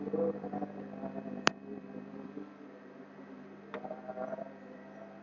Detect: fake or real fake